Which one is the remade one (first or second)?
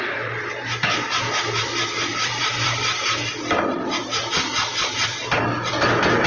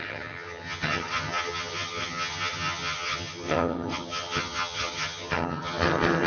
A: second